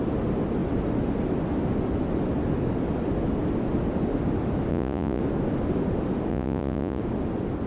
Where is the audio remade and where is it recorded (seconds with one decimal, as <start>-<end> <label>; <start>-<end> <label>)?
0.0-4.7 recorded; 4.7-5.2 remade; 5.2-6.3 recorded; 6.3-7.0 remade; 7.0-7.7 recorded